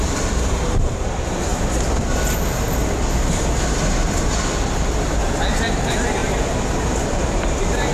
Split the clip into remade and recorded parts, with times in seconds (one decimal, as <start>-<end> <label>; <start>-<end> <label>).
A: 0.0-1.5 remade; 1.5-5.5 recorded; 5.5-7.9 remade